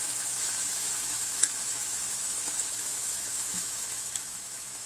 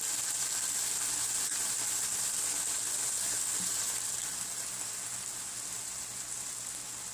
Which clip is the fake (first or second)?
first